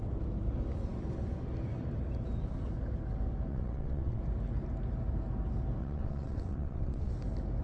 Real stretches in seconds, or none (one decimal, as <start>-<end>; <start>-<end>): 0.0-3.5; 4.2-5.8; 7.1-7.6

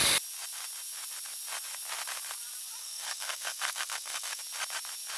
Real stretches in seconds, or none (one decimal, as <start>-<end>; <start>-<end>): 0.0-2.8; 4.4-5.2

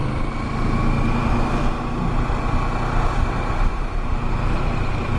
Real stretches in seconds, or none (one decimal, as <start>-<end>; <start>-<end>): 0.0-3.1